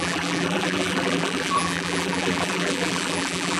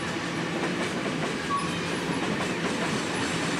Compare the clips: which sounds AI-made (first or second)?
first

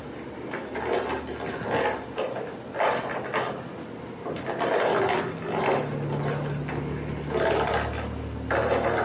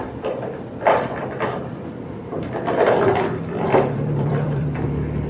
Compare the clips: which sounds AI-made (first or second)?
second